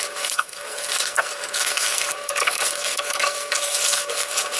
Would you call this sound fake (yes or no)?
yes